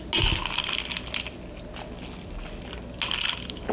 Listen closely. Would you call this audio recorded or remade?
recorded